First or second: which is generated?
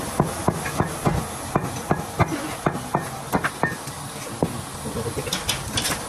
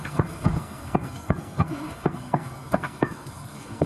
second